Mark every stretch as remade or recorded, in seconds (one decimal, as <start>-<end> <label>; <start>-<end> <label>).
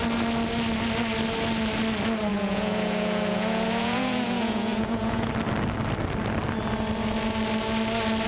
0.0-2.3 recorded; 2.3-5.3 remade; 5.3-8.3 recorded